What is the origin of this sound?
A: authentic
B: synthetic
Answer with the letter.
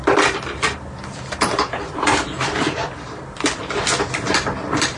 B